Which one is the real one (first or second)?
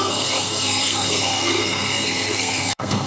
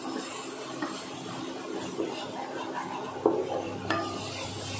second